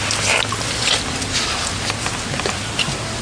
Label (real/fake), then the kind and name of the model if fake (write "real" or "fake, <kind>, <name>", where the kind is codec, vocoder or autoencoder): real